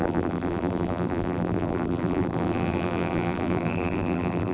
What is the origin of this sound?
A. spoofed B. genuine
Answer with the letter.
A